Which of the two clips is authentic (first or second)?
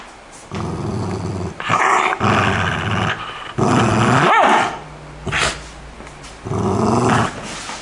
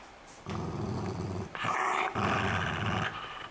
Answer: first